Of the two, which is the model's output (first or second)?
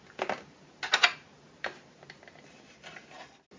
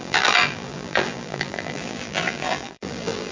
second